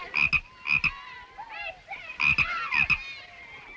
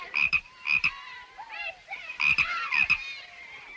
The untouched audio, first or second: first